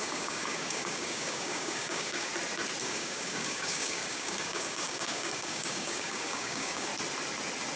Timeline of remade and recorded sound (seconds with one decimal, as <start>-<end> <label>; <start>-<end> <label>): 0.0-2.3 remade; 2.3-2.8 recorded; 2.8-6.9 remade; 6.9-7.8 recorded